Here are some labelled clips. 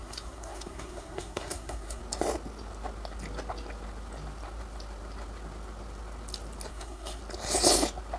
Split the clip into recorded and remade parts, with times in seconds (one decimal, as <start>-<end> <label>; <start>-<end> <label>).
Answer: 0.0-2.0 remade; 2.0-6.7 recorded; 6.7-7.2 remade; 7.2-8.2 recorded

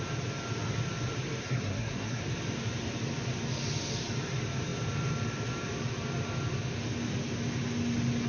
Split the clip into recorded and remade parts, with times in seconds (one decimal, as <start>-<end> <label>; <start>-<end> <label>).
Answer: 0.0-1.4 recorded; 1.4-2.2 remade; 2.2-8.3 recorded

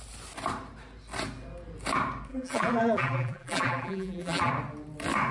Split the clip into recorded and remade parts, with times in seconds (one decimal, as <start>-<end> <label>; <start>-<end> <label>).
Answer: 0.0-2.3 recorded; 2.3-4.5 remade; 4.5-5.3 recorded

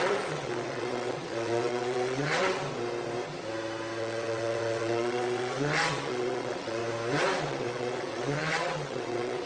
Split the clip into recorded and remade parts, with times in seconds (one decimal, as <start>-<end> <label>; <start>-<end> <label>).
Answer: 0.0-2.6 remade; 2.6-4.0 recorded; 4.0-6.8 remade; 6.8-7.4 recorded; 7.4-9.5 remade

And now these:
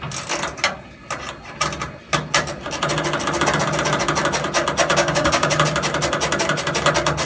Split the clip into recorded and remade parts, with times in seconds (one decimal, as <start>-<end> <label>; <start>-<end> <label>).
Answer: 0.0-4.9 recorded; 4.9-5.5 remade; 5.5-7.3 recorded

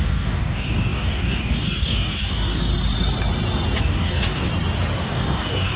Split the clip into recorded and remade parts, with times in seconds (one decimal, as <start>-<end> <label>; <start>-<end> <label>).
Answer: 0.0-2.7 remade; 2.7-3.8 recorded; 3.8-4.5 remade; 4.5-5.0 recorded; 5.0-5.8 remade

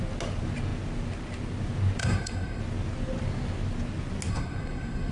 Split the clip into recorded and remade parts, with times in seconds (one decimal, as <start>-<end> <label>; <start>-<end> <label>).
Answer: 0.0-2.0 recorded; 2.0-2.6 remade; 2.6-4.3 recorded; 4.3-5.1 remade

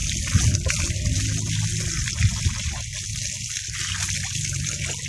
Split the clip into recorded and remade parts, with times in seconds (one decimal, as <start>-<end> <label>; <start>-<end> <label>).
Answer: 0.0-5.1 recorded